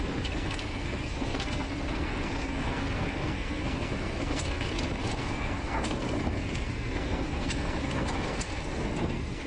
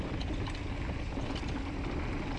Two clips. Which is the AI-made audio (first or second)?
first